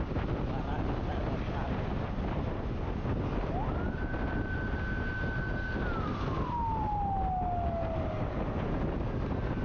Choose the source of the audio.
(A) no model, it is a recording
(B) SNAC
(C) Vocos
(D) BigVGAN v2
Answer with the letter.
A